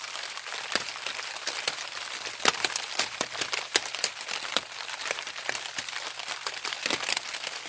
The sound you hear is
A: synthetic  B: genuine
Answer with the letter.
A